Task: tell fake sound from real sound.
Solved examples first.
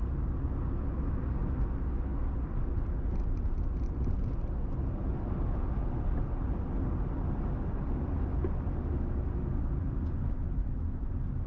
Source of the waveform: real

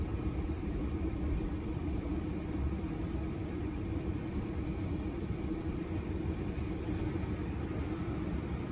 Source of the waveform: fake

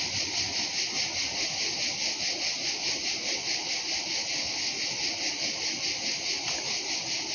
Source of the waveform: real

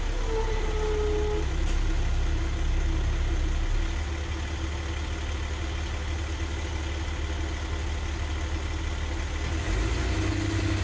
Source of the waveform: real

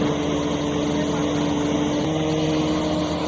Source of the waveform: real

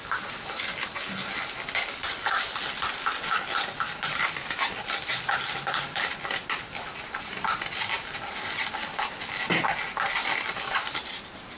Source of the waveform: real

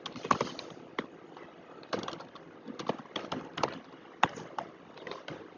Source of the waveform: real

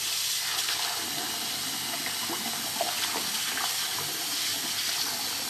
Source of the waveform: real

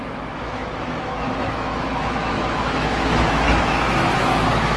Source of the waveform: fake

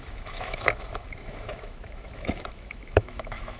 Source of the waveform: fake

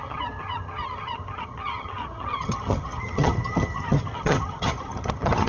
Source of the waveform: fake